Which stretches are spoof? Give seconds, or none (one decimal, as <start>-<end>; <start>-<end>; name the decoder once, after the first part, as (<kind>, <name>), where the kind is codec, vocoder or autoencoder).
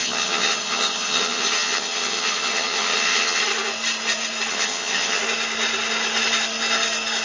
0.0-3.4 (vocoder, HiFi-GAN); 4.5-5.2